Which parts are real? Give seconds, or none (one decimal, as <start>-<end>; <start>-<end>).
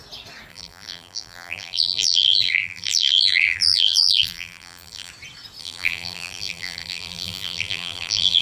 0.0-0.5; 5.1-5.6